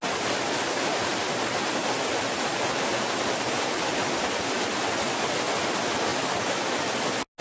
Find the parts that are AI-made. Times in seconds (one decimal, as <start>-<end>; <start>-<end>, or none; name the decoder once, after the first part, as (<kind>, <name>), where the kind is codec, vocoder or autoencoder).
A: none